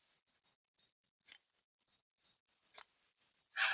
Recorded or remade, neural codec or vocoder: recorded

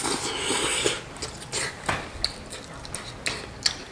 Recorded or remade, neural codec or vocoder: recorded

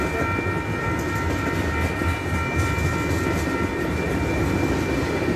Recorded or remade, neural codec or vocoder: recorded